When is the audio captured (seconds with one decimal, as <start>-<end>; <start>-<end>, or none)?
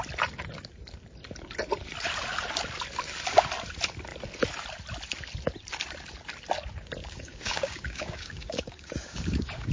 0.0-7.0